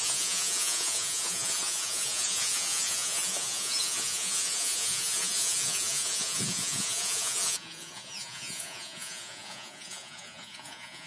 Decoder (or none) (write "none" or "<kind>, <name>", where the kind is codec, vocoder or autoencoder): vocoder, Vocos